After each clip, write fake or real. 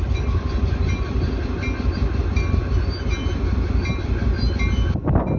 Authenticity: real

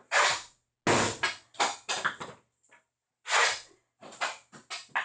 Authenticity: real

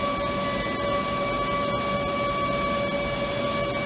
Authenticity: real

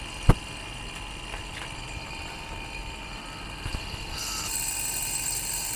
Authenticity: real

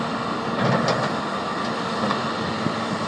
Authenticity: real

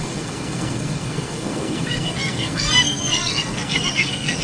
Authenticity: fake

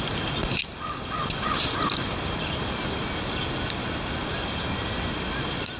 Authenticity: real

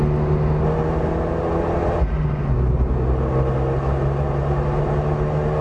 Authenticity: real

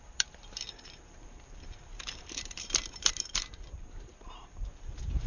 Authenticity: fake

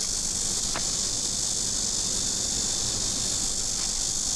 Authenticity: real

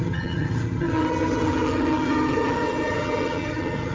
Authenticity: fake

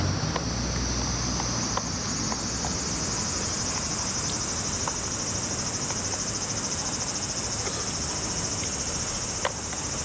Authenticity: real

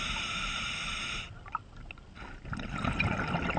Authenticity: real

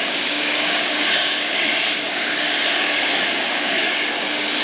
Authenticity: fake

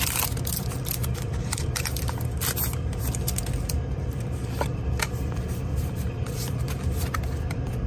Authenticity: fake